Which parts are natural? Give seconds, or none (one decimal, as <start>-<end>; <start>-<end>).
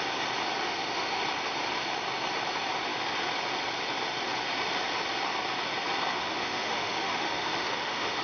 0.0-0.6; 1.2-6.1